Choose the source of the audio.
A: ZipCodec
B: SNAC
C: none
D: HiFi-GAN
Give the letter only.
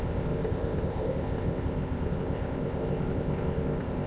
A